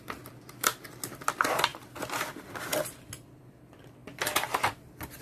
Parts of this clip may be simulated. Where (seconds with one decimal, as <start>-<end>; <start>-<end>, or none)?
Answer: none